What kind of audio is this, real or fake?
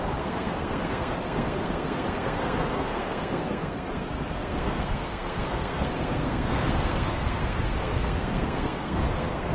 fake